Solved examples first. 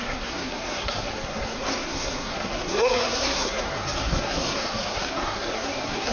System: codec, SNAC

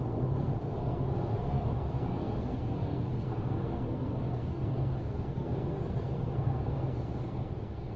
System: codec, SNAC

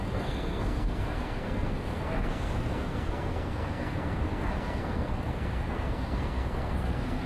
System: codec, SNAC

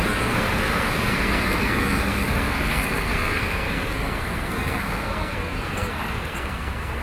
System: codec, SNAC